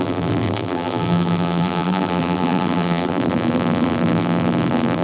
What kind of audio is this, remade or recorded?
remade